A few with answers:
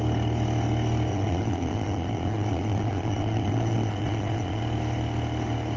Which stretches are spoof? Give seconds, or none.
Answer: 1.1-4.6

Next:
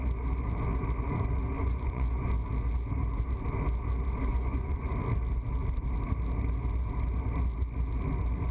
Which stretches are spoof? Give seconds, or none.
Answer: 1.6-2.3; 4.3-4.9

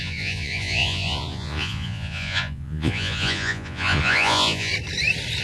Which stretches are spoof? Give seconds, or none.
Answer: 0.0-4.7